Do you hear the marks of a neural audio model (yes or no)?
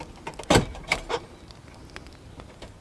no